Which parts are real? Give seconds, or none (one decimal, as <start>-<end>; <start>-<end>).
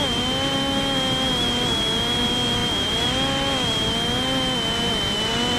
0.0-5.6